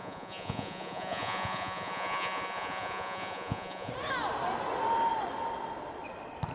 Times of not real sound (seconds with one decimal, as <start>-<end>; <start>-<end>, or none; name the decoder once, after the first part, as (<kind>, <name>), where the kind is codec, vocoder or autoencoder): 0.0-3.9 (vocoder, Vocos)